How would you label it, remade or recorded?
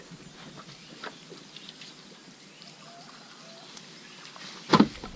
recorded